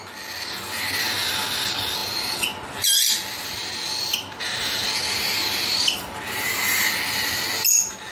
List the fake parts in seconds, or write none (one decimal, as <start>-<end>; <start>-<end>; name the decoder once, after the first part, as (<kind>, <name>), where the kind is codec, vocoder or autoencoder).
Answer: none